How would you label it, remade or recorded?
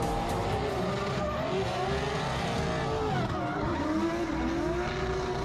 recorded